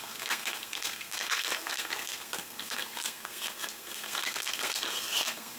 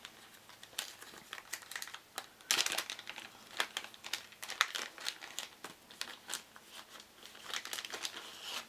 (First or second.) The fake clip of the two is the first